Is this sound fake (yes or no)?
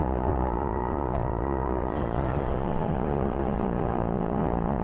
yes